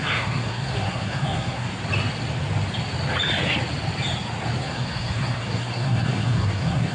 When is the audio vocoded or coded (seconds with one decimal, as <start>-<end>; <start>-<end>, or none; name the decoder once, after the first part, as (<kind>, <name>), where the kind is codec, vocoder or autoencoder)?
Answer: 0.0-1.7 (codec, SNAC); 4.6-6.9